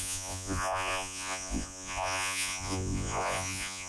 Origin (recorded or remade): remade